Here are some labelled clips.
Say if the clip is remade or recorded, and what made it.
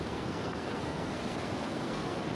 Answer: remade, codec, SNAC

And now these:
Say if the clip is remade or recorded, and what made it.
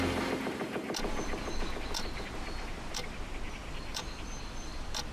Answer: recorded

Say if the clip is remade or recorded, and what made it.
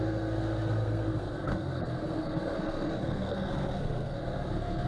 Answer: remade, codec, SNAC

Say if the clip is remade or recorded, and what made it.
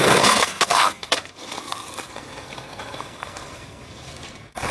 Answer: remade, codec, SNAC